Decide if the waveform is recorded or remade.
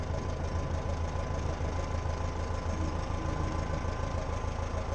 recorded